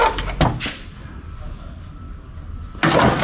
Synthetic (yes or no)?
no